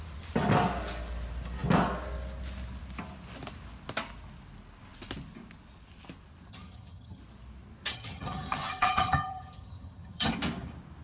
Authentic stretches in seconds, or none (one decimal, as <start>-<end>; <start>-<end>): 0.0-6.5; 7.2-7.9; 10.3-11.0